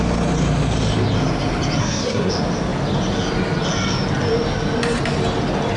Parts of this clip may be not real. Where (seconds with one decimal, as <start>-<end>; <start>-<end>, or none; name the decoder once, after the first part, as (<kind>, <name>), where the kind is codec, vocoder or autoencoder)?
1.8-2.3 (codec, SNAC)

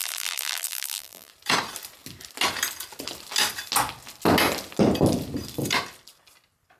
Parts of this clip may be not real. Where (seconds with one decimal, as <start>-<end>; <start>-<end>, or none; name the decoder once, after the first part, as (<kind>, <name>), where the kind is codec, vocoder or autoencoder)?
0.0-1.3 (vocoder, BigVGAN v2)

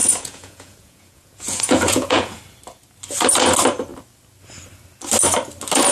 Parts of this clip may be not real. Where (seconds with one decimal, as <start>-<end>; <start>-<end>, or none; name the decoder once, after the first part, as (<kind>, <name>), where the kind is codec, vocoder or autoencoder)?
0.0-2.4 (vocoder, Vocos)